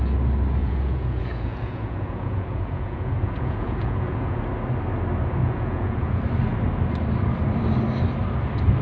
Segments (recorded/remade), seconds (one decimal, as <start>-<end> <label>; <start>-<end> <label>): 0.0-0.6 recorded; 0.6-4.4 remade; 4.4-5.4 recorded; 5.4-6.1 remade; 6.1-8.8 recorded